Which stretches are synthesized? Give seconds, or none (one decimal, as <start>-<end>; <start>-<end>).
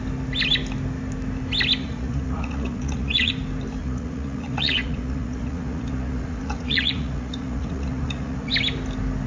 1.8-3.3; 3.8-8.5